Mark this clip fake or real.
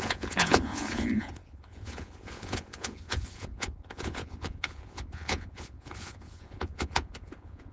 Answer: fake